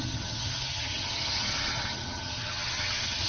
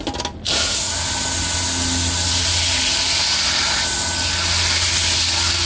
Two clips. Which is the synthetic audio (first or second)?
first